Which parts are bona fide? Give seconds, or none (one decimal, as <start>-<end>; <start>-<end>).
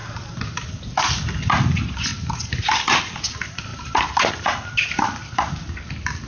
0.7-3.7; 4.3-6.3